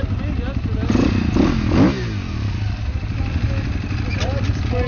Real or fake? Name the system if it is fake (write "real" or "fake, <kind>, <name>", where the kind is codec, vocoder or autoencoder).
real